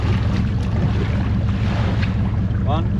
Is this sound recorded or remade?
recorded